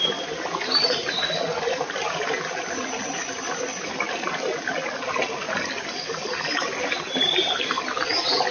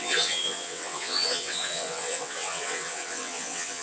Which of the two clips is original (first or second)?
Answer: first